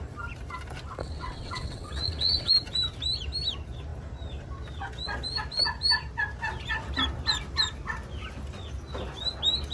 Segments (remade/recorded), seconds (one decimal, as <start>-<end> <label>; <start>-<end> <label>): 0.0-1.0 recorded; 1.0-2.5 remade; 2.5-9.7 recorded